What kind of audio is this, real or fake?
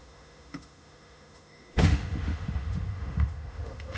fake